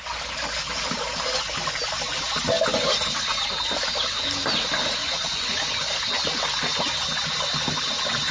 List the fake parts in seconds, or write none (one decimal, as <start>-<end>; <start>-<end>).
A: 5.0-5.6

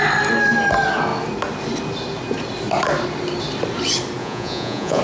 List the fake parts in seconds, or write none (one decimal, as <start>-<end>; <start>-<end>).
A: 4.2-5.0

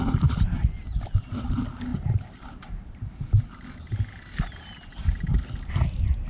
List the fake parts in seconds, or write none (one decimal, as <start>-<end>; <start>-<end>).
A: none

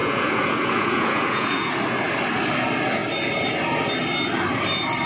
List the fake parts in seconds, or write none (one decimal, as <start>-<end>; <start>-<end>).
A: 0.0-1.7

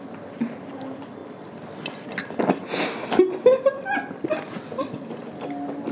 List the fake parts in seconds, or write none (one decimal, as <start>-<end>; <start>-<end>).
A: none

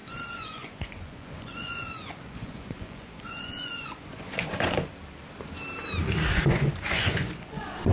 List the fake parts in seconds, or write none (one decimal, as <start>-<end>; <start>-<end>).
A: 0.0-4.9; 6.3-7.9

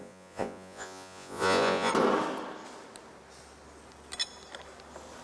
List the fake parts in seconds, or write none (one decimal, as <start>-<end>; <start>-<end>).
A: 0.0-1.9

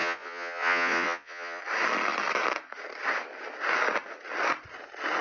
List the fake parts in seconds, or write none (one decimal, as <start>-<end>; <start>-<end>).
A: 0.0-1.6